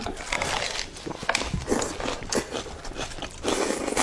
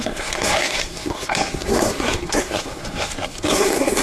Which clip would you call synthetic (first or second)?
second